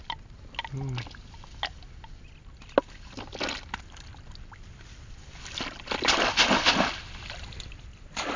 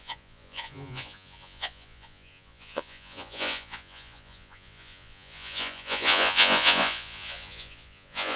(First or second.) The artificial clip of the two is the second